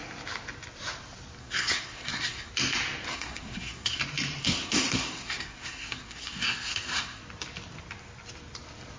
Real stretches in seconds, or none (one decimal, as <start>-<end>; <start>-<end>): 0.0-1.4; 2.5-3.1; 4.0-4.4; 7.2-9.0